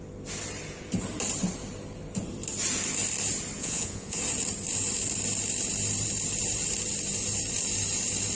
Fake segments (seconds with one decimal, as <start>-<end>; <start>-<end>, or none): 3.6-4.2

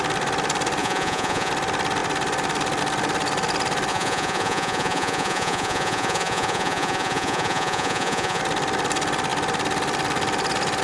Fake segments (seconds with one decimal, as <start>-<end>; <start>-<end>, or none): 0.8-1.5; 3.9-8.4

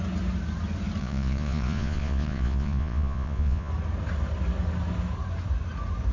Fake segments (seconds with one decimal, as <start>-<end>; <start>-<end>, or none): 1.0-3.7

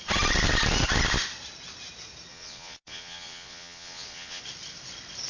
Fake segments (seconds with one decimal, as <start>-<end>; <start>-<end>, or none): 2.3-4.4

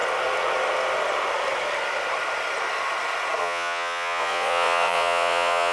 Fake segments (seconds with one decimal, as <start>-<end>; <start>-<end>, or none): 3.4-5.7

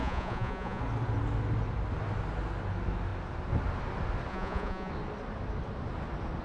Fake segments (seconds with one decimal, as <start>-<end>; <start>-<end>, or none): 0.0-0.8; 4.3-4.9